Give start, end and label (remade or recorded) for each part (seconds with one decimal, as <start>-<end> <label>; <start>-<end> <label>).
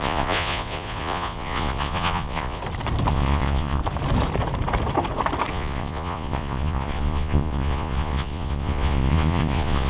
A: 0.0-2.6 remade; 2.6-3.1 recorded; 3.1-3.8 remade; 3.8-5.5 recorded; 5.5-9.9 remade